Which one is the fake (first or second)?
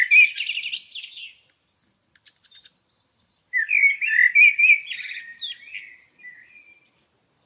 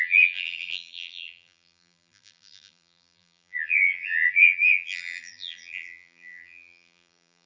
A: second